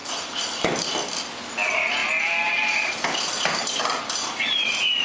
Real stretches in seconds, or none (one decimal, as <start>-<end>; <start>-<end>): 1.1-2.0

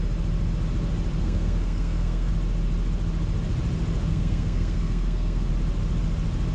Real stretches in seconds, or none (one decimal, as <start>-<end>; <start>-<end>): 0.0-1.2; 2.3-4.1; 5.5-6.5

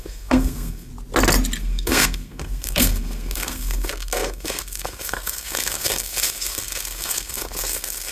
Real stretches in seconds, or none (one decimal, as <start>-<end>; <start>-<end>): 0.9-1.6

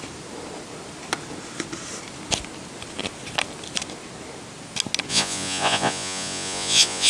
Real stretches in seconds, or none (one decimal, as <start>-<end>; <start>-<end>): 0.0-5.1

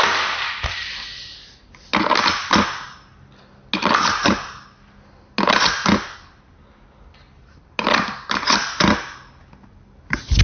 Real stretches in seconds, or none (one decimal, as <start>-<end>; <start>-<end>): 0.0-10.4

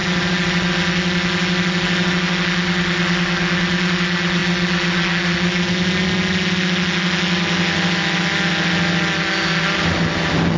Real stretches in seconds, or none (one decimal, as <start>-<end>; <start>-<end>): 0.0-10.6

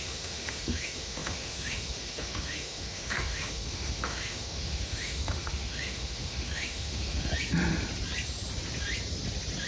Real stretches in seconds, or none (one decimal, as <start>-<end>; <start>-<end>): 7.3-9.7